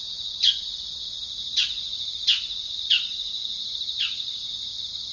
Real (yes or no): no